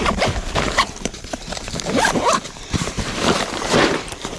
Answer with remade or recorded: remade